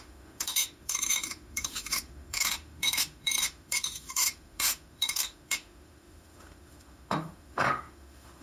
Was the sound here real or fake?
fake